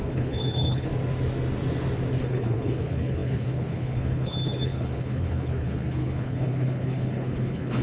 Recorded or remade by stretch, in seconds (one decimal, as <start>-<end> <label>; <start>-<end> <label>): 0.0-0.9 remade; 0.9-2.2 recorded; 2.2-7.8 remade